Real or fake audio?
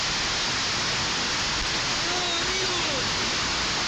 real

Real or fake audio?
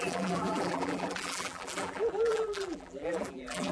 fake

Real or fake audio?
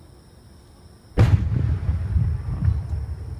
fake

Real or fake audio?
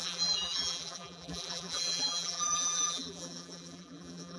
fake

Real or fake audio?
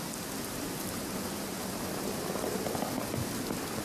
real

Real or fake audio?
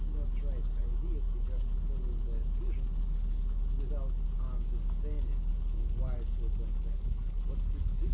real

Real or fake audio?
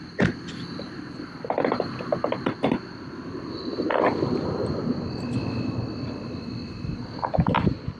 real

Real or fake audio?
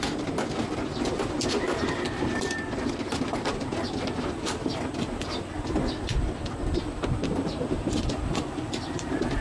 fake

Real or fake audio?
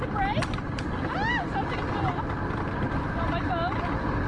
real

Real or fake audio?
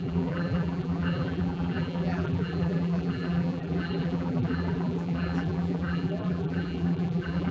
fake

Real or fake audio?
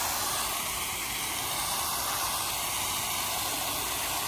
real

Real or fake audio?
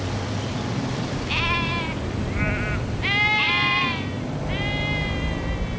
fake